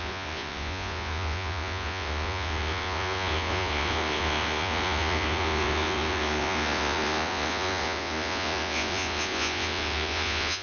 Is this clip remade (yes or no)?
yes